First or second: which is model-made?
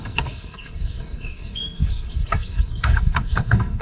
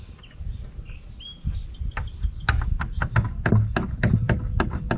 first